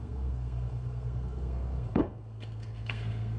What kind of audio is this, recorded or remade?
remade